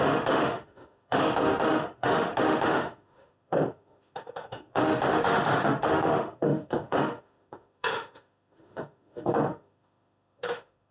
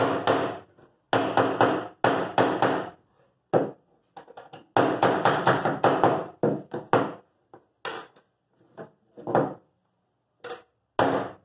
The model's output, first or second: first